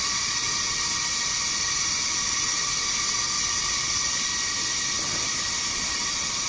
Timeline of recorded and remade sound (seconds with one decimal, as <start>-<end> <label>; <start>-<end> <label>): 0.0-0.4 remade; 0.4-3.5 recorded; 3.5-4.3 remade; 4.3-5.6 recorded; 5.6-6.5 remade